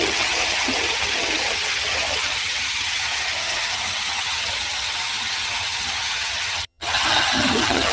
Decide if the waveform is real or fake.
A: fake